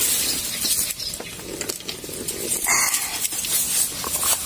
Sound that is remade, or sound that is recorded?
recorded